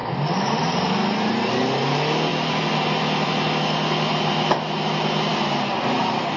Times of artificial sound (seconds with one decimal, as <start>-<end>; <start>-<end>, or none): 0.0-1.5; 2.3-3.3